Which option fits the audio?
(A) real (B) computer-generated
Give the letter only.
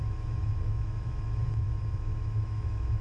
B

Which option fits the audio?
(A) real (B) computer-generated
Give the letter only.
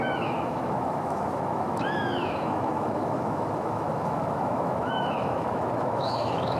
B